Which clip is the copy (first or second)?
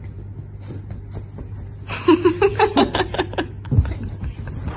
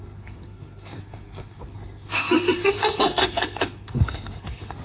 second